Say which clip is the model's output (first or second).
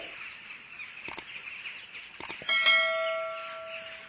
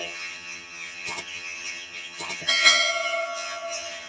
second